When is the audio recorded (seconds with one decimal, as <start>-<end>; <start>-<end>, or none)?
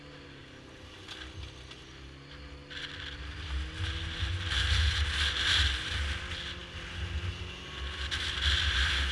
0.0-9.1